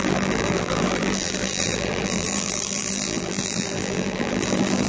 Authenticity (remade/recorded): remade